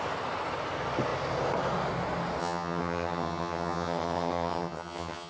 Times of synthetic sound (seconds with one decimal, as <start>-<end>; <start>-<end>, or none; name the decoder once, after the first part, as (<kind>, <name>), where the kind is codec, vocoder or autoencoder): 2.4-5.3 (vocoder, HiFi-GAN)